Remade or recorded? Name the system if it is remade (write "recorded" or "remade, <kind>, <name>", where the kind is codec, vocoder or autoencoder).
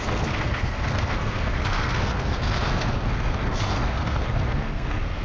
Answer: remade, codec, SNAC